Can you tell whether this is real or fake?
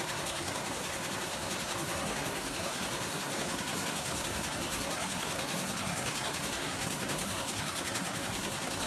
fake